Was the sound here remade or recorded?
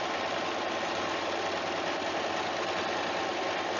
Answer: recorded